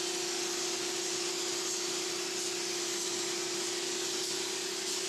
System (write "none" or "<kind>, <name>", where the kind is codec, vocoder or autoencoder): none